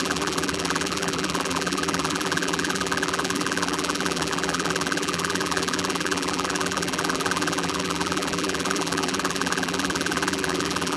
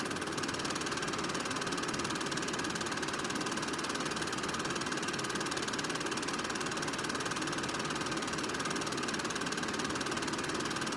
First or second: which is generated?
first